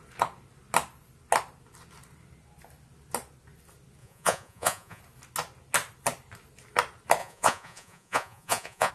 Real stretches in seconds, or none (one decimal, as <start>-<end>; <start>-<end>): 0.0-4.0; 5.0-7.2